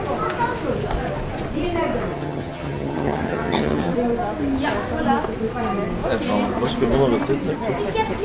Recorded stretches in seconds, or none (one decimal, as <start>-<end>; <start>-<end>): 0.0-2.1; 3.9-8.2